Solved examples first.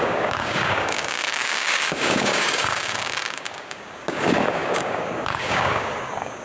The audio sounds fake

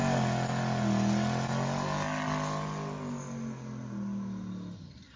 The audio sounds real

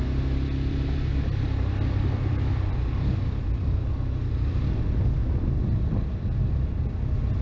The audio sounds real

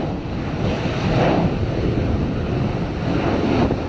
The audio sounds real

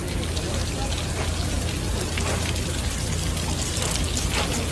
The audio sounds real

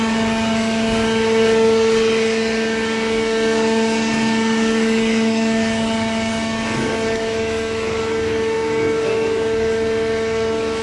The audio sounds fake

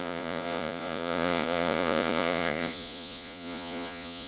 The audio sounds fake